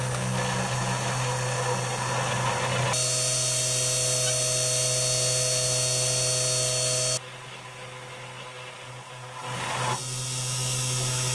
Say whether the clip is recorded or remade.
recorded